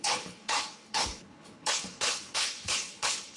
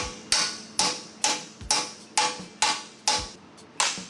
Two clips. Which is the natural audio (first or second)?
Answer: second